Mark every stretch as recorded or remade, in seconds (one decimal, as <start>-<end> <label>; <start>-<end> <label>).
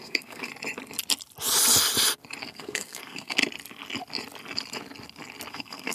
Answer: 0.0-0.5 remade; 0.5-2.4 recorded; 2.4-3.4 remade; 3.4-5.5 recorded; 5.5-5.9 remade